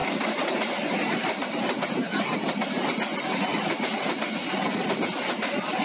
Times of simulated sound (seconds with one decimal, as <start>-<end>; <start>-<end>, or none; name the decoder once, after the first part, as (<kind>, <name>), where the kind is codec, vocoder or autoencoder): 3.5-4.1 (vocoder, BigVGAN v2)

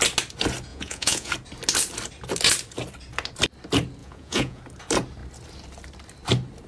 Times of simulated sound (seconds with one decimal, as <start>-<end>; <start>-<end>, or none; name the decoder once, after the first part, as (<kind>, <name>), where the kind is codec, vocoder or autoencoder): 0.7-1.3 (vocoder, Vocos); 4.0-4.6

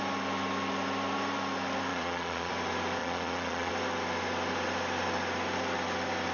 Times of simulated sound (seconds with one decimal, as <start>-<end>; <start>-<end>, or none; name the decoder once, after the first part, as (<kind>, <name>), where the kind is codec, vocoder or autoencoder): 1.9-2.5 (vocoder, Vocos); 3.0-3.7

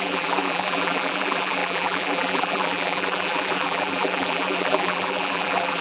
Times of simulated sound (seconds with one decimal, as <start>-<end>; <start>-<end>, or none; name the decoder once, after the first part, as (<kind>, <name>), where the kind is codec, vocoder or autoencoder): 0.0-5.8 (vocoder, BigVGAN v2)